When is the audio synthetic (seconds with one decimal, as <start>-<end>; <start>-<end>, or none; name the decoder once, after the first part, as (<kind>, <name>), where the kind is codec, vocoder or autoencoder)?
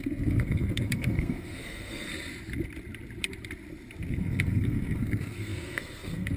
0.0-2.1 (codec, SNAC); 4.1-6.4